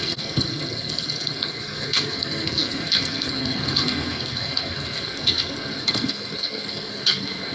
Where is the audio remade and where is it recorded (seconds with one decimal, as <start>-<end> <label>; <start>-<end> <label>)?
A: 0.0-7.5 remade